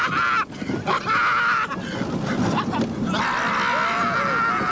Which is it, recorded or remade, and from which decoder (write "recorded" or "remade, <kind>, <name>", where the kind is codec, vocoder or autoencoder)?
recorded